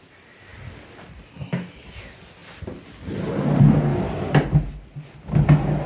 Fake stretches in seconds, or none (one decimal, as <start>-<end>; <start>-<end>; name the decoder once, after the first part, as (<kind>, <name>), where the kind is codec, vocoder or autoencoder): none